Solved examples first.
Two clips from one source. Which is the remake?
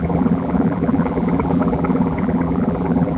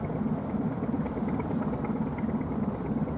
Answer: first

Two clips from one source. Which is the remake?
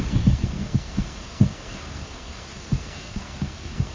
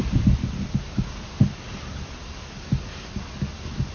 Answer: first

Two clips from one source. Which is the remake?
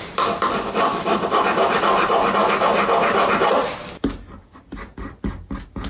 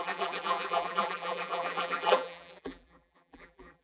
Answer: second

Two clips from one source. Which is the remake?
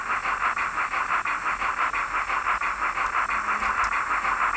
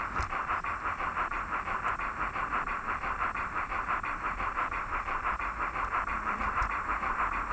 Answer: second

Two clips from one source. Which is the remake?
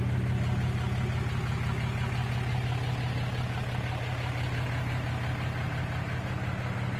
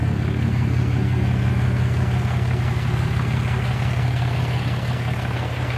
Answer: second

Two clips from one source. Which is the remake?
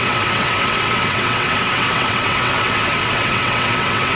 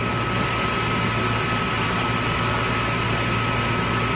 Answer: first